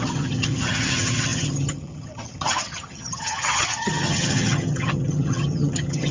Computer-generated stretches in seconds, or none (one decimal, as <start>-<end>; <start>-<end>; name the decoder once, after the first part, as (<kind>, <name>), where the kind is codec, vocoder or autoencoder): 0.0-6.1 (vocoder, HiFi-GAN)